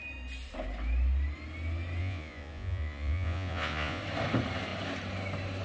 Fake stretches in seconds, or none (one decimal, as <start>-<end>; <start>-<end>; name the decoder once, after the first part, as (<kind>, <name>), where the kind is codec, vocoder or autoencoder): 2.0-4.0 (vocoder, Vocos)